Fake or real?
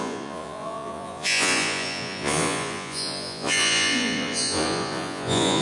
fake